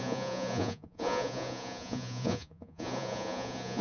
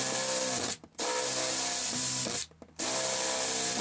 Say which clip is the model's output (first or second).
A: first